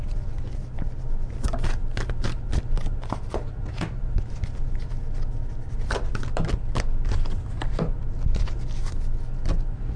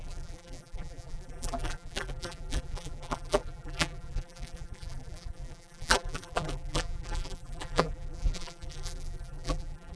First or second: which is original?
first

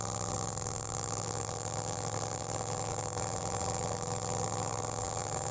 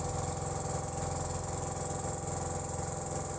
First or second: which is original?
second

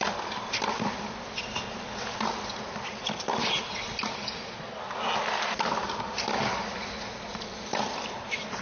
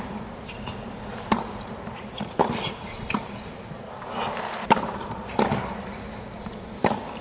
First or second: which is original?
first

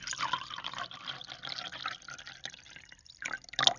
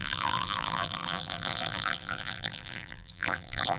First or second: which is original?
first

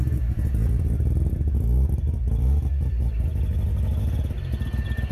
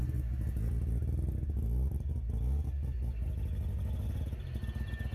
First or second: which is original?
second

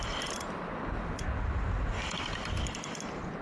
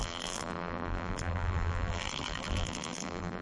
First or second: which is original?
first